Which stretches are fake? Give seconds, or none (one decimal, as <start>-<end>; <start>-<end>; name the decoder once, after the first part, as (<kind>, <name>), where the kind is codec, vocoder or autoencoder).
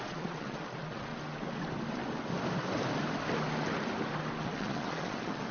0.0-1.1 (vocoder, Vocos); 4.4-5.5